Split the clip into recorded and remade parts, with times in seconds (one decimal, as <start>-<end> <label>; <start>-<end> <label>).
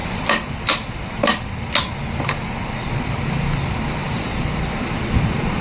0.0-5.6 recorded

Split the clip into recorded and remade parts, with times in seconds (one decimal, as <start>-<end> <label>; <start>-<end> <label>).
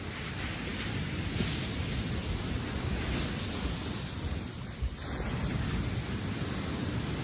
0.0-7.2 recorded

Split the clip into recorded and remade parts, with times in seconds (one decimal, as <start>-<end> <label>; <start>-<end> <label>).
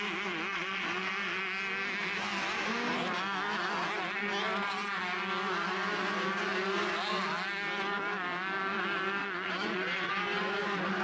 0.0-0.5 recorded; 0.5-1.1 remade; 1.1-9.2 recorded; 9.2-10.1 remade; 10.1-11.0 recorded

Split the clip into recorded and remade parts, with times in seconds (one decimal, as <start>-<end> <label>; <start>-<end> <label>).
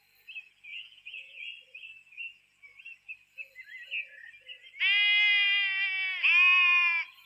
0.0-0.7 recorded; 0.7-1.4 remade; 1.4-7.3 recorded